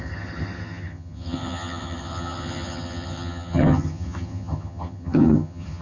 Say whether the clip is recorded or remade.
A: remade